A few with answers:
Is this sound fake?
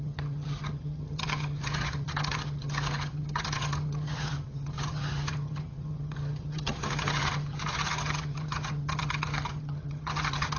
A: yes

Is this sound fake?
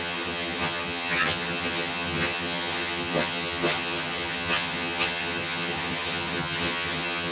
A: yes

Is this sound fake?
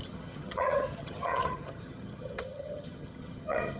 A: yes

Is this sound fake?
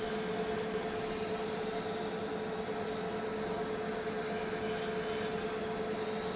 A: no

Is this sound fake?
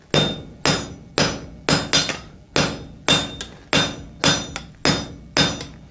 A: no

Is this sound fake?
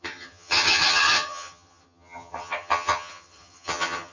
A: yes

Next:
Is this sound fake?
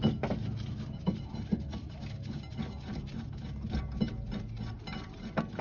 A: no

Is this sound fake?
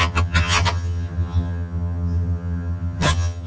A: yes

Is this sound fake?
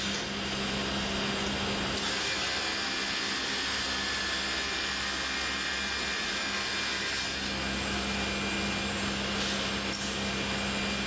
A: no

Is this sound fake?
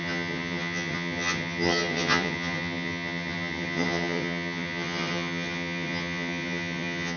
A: yes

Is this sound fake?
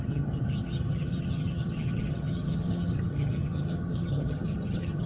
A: yes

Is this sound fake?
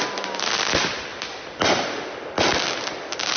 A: no